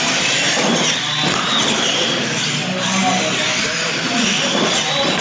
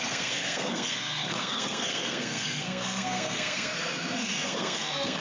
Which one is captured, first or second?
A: first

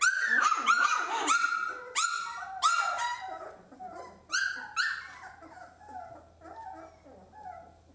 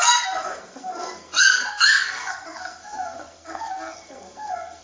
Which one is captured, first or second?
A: first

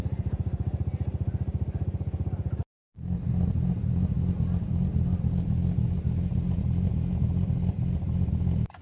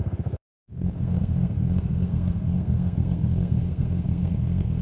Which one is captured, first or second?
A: first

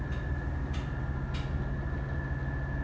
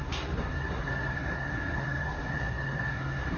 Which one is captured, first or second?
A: first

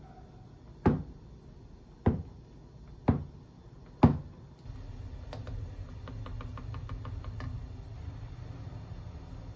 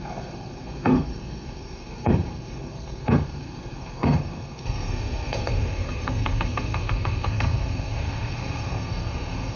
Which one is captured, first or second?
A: first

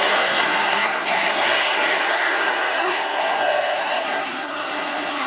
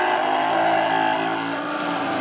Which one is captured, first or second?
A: second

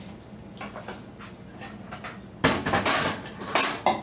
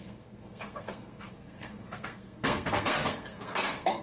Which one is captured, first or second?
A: first